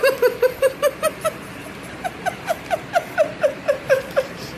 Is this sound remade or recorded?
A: remade